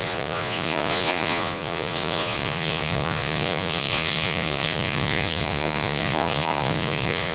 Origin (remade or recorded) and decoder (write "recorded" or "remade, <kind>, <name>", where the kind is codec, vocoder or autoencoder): remade, vocoder, Vocos